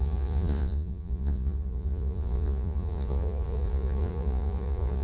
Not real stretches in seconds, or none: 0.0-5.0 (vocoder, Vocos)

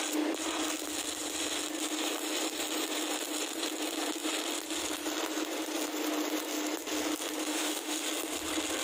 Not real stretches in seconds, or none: 7.4-8.0 (autoencoder, DAC-VAE)